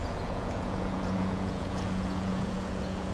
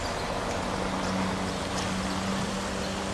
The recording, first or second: second